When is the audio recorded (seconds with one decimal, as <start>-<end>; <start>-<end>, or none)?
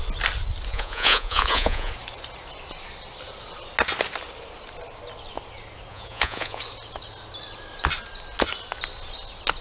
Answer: 0.0-0.7; 1.9-5.9; 6.6-9.6